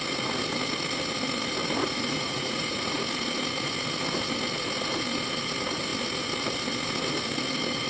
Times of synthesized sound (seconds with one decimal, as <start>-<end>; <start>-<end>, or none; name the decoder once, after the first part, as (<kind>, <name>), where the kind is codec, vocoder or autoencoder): 1.8-3.0 (vocoder, Vocos)